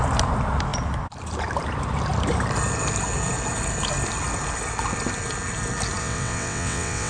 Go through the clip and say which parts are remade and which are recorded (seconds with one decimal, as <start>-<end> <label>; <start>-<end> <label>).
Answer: 0.0-6.0 recorded; 6.0-7.1 remade